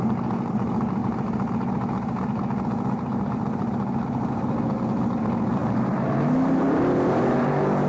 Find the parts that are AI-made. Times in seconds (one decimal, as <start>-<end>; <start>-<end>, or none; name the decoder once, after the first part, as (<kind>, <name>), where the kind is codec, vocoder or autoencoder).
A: none